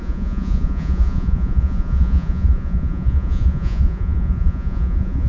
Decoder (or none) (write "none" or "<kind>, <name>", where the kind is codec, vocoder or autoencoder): vocoder, Vocos